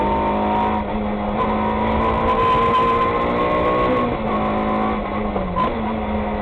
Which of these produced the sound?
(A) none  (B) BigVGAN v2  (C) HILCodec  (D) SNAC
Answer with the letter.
A